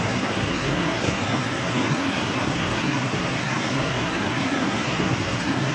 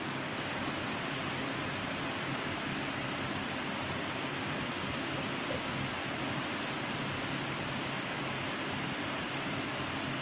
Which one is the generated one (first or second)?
first